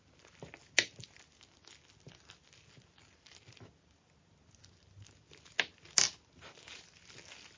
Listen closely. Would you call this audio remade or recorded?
recorded